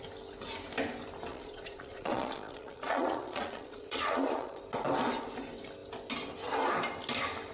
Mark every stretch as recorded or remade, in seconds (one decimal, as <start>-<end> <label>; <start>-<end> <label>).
0.0-1.3 recorded; 1.3-4.6 remade; 4.6-7.5 recorded

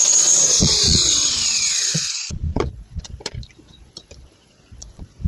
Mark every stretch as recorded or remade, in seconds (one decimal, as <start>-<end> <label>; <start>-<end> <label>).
0.0-5.3 remade

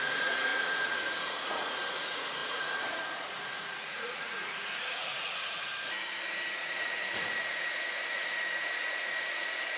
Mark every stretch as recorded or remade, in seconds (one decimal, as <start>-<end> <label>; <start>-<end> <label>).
0.0-5.7 remade; 5.7-6.5 recorded; 6.5-9.8 remade

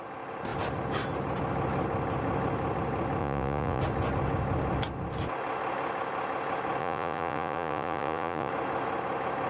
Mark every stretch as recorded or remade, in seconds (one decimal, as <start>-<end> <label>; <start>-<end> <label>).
0.0-3.2 recorded; 3.2-3.8 remade; 3.8-6.8 recorded; 6.8-8.5 remade; 8.5-9.5 recorded

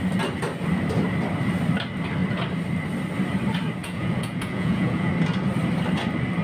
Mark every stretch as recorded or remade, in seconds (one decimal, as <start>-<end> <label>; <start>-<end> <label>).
0.0-3.8 recorded; 3.8-5.1 remade; 5.1-6.4 recorded

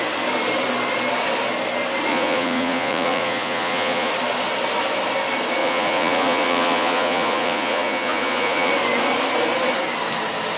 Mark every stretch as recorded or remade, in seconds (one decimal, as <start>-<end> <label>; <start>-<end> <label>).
0.0-2.1 recorded; 2.1-4.1 remade; 4.1-5.6 recorded; 5.6-8.7 remade; 8.7-10.6 recorded

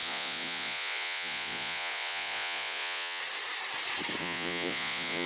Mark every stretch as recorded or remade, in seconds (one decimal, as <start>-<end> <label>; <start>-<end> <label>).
0.0-3.2 remade; 3.2-4.2 recorded; 4.2-5.3 remade